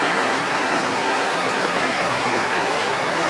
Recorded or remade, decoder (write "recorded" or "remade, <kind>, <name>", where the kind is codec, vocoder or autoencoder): remade, codec, SNAC